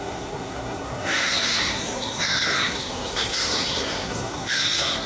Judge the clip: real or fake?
fake